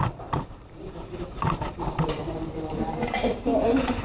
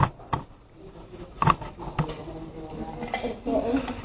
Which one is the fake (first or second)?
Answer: first